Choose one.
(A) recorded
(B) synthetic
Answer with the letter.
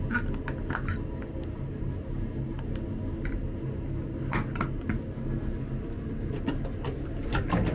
A